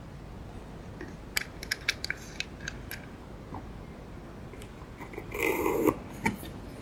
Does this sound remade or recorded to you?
recorded